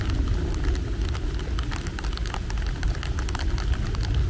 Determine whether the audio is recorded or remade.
recorded